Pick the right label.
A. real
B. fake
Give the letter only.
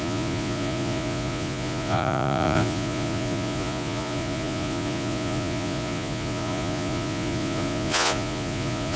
B